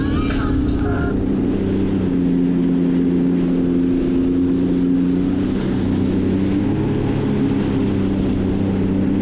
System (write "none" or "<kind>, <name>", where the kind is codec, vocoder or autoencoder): none